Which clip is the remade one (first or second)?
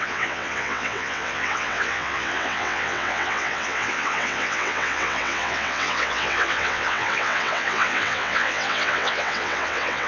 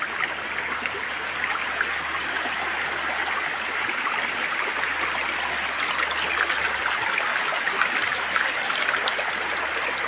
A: first